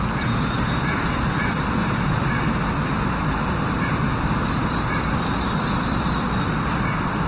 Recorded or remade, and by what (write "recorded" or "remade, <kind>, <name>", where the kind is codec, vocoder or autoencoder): recorded